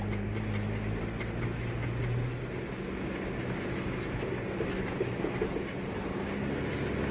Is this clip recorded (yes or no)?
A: yes